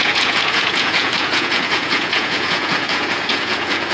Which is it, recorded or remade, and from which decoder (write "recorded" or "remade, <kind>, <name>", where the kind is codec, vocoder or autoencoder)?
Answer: remade, vocoder, Vocos